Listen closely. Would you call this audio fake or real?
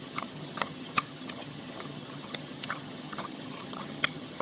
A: fake